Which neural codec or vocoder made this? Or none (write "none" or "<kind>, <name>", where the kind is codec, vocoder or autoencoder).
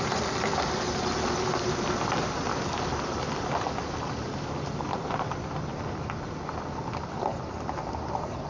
none